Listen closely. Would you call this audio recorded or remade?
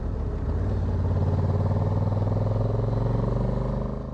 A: recorded